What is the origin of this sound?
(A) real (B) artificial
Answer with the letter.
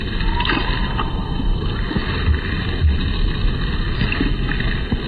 A